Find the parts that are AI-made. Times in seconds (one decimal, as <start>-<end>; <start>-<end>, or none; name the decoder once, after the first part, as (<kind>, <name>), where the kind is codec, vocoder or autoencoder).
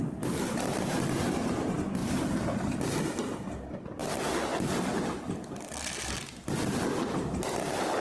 none